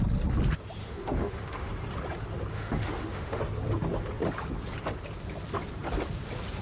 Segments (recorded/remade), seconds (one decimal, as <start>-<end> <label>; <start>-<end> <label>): 0.0-0.8 recorded; 0.8-1.7 remade; 1.7-2.5 recorded; 2.5-3.4 remade; 3.4-6.6 recorded